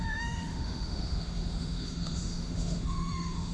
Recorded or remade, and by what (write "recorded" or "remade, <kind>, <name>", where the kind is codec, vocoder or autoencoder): remade, autoencoder, DAC-VAE